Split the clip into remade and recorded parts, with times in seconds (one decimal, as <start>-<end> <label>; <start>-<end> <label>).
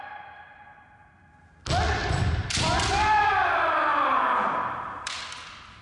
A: 0.0-2.0 recorded; 2.0-2.5 remade; 2.5-3.9 recorded; 3.9-5.2 remade; 5.2-5.8 recorded